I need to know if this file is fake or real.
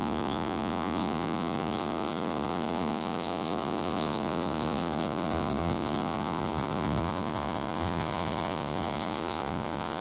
fake